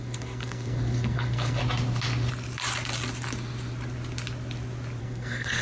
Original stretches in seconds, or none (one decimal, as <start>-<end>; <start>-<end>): 1.6-5.0